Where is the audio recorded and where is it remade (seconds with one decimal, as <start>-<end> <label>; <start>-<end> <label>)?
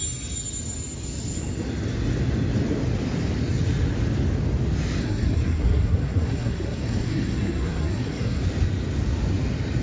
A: 0.0-5.0 recorded; 5.0-8.4 remade; 8.4-9.8 recorded